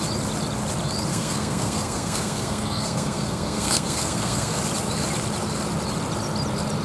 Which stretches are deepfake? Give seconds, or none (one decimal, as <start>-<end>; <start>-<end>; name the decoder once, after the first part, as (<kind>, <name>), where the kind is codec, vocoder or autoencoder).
1.1-4.6 (codec, SNAC)